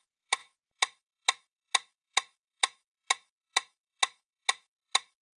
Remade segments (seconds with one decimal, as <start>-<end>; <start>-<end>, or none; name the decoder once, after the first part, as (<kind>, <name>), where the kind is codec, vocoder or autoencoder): 0.0-5.4 (autoencoder, DAC-VAE)